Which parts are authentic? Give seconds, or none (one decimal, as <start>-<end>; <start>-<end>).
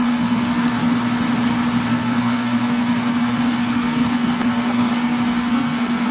0.8-1.9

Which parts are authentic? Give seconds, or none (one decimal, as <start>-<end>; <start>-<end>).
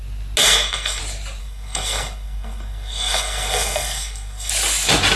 0.0-0.4; 1.0-1.4; 4.5-5.2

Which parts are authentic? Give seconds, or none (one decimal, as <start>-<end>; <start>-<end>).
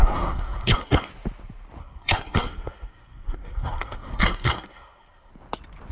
1.1-1.8; 5.3-5.9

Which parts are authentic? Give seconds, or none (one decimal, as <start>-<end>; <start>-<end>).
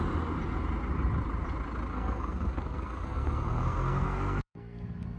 0.0-1.9